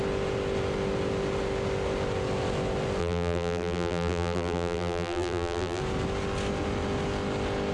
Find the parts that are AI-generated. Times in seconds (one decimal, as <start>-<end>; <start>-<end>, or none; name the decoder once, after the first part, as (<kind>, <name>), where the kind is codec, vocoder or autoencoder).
3.0-5.8 (vocoder, BigVGAN v2)

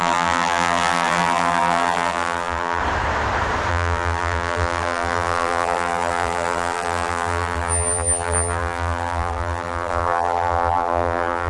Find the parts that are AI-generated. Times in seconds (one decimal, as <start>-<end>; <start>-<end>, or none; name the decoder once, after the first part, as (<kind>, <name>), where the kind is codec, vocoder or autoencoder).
0.0-2.8 (vocoder, BigVGAN v2); 3.7-11.5